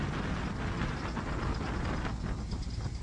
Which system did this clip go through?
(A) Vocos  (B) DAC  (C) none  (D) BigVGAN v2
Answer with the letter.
C